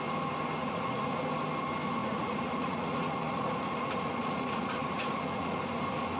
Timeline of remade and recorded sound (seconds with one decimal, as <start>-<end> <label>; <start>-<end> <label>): 0.0-0.6 recorded; 0.6-1.2 remade; 1.2-2.0 recorded; 2.0-5.6 remade; 5.6-6.2 recorded